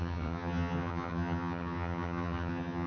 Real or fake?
fake